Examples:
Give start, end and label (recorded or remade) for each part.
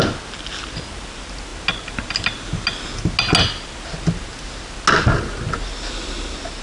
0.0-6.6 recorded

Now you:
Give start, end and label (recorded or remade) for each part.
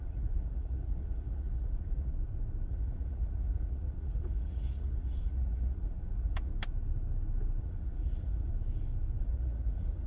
0.0-2.1 remade; 2.1-2.7 recorded; 2.7-6.5 remade; 6.5-7.6 recorded; 7.6-8.5 remade; 8.5-9.2 recorded; 9.2-10.1 remade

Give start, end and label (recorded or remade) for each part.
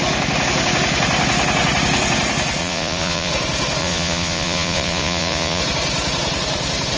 0.0-2.6 recorded; 2.6-3.3 remade; 3.3-3.8 recorded; 3.8-5.6 remade; 5.6-7.0 recorded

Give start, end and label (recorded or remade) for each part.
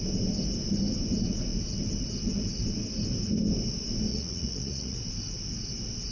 0.0-4.1 recorded; 4.1-5.0 remade; 5.0-6.1 recorded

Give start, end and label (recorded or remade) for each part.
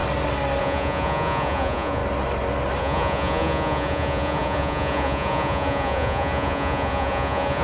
0.0-0.6 recorded; 0.6-2.0 remade; 2.0-2.8 recorded; 2.8-7.6 remade